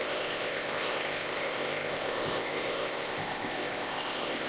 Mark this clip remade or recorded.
remade